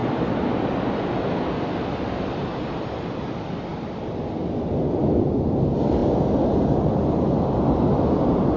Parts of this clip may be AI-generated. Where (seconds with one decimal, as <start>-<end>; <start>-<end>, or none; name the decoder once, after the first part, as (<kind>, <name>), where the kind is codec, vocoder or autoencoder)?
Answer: none